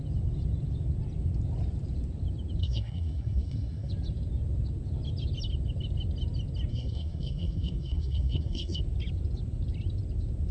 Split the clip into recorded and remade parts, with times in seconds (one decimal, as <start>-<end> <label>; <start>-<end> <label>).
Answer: 0.0-2.6 recorded; 2.6-3.9 remade; 3.9-6.7 recorded; 6.7-8.8 remade; 8.8-10.5 recorded